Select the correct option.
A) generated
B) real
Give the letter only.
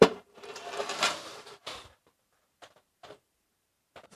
A